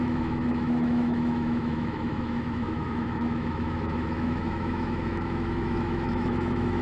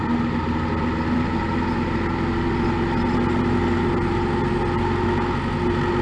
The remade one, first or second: first